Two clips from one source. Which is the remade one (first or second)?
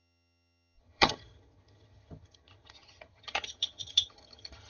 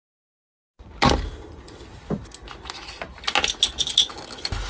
first